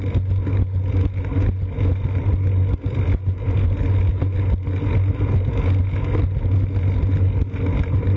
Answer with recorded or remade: recorded